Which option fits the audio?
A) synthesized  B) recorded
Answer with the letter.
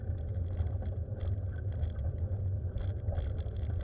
B